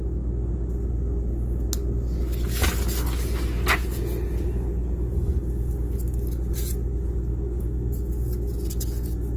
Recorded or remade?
recorded